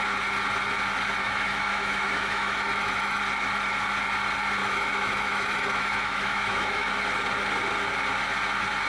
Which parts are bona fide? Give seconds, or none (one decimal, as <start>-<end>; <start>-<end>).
0.0-1.2; 3.2-4.6; 6.9-8.9